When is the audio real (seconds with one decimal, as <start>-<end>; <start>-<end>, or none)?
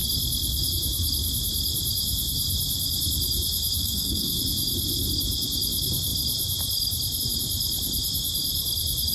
0.0-3.8; 4.4-9.1